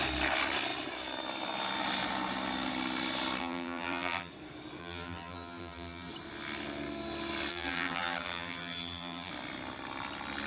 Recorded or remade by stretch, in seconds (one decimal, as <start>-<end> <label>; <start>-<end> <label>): 0.0-3.4 recorded; 3.4-4.3 remade; 4.3-4.8 recorded; 4.8-6.1 remade; 6.1-7.5 recorded; 7.5-9.3 remade; 9.3-10.5 recorded